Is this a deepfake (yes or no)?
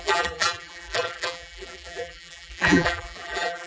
yes